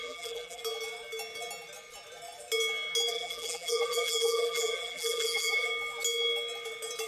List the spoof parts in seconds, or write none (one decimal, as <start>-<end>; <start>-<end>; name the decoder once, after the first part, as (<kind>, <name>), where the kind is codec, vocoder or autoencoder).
0.0-0.6 (vocoder, BigVGAN v2); 3.1-5.7

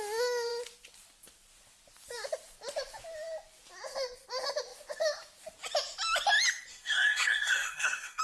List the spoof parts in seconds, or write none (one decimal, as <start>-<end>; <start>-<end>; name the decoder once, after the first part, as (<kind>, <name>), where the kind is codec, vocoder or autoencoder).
6.7-8.2 (codec, SNAC)